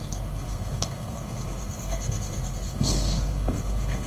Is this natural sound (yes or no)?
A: no